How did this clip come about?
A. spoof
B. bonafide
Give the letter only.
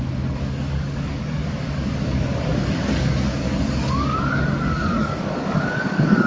A